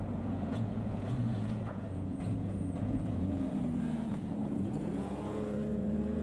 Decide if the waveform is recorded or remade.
remade